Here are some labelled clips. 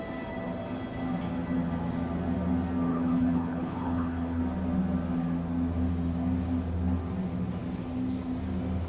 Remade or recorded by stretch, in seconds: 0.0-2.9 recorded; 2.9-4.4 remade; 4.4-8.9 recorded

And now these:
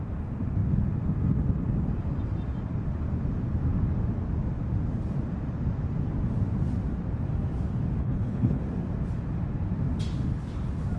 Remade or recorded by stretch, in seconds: 0.0-8.0 recorded; 8.0-8.6 remade; 8.6-11.0 recorded

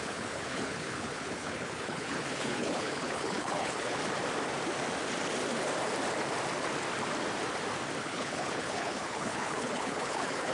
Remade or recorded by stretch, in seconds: 0.0-4.0 remade; 4.0-8.0 recorded; 8.0-10.5 remade

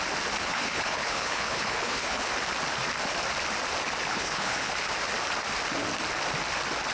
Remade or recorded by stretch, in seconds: 0.0-0.4 recorded; 0.4-2.3 remade; 2.3-4.1 recorded; 4.1-4.7 remade; 4.7-6.9 recorded

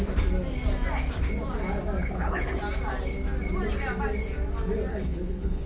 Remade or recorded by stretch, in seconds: 0.0-2.0 recorded; 2.0-2.6 remade; 2.6-4.9 recorded; 4.9-5.7 remade

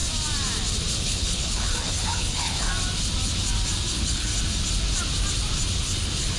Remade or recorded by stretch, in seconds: 0.0-1.0 recorded; 1.0-2.7 remade; 2.7-3.9 recorded; 3.9-4.3 remade; 4.3-5.8 recorded; 5.8-6.4 remade

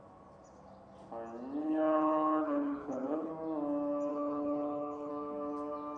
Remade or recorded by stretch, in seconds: 0.0-1.6 recorded; 1.6-3.3 remade; 3.3-4.1 recorded; 4.1-5.1 remade; 5.1-6.0 recorded